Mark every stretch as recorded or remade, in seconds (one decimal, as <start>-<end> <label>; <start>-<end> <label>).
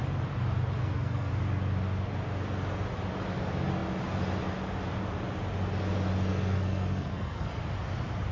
0.0-0.8 recorded; 0.8-1.3 remade; 1.3-6.3 recorded; 6.3-7.6 remade; 7.6-8.3 recorded